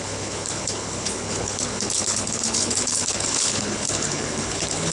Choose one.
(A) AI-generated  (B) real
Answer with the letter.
A